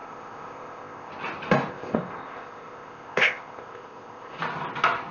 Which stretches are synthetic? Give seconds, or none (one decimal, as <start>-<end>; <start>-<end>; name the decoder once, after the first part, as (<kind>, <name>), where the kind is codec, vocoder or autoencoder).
0.0-1.1 (codec, ZipCodec); 1.7-4.4